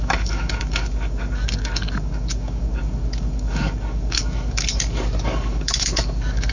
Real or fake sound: fake